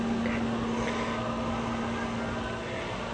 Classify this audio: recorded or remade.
recorded